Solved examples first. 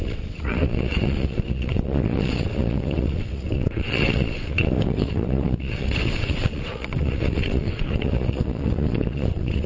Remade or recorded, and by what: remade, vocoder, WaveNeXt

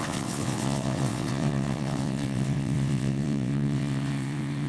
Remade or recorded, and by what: remade, vocoder, WaveNeXt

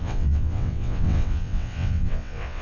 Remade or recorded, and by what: remade, vocoder, WaveNeXt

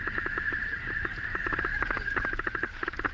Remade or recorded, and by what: recorded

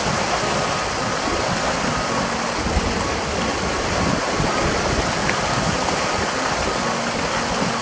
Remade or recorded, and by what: recorded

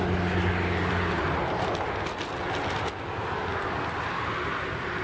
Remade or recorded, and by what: recorded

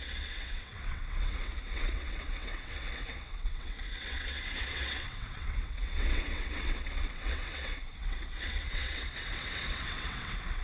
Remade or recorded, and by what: remade, vocoder, WaveNeXt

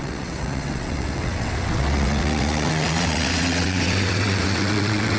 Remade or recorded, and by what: remade, vocoder, WaveNeXt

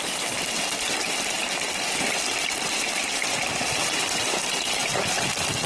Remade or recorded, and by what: recorded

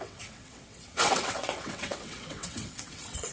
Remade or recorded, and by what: remade, vocoder, WaveNeXt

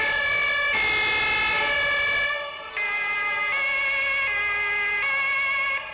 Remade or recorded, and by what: recorded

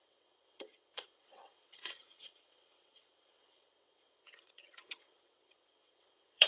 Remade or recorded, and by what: remade, vocoder, WaveNeXt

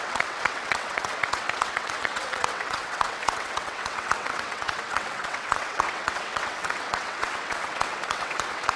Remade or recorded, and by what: remade, vocoder, WaveNeXt